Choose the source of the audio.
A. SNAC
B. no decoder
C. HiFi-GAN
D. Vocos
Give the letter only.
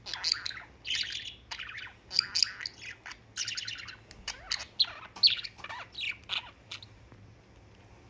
B